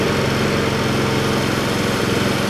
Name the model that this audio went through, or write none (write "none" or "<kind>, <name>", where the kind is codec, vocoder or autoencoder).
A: none